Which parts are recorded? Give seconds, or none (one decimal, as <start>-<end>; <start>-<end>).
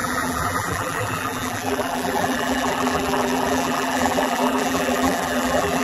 none